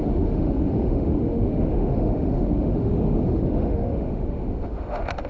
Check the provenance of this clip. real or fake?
fake